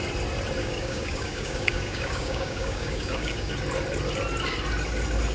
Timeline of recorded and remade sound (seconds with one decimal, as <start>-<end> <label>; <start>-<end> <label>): 0.0-0.6 recorded; 0.6-3.5 remade; 3.5-5.3 recorded